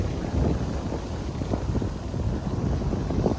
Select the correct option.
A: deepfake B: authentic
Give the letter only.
B